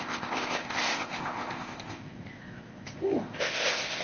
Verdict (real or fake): fake